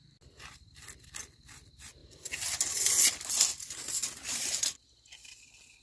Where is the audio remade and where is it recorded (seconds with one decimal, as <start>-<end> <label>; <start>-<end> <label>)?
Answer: 0.0-5.8 recorded